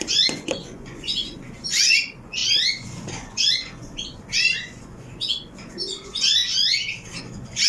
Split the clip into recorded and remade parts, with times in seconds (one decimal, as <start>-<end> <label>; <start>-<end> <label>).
0.0-6.4 remade; 6.4-7.2 recorded; 7.2-7.7 remade